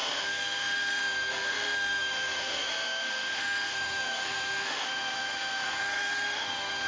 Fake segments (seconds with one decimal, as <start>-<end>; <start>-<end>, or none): 0.0-6.9